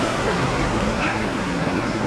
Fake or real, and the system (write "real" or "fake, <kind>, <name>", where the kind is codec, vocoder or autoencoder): fake, codec, SNAC